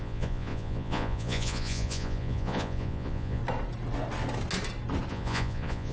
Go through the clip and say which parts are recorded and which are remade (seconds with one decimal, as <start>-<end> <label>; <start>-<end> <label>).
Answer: 0.0-3.4 remade; 3.4-5.1 recorded; 5.1-5.9 remade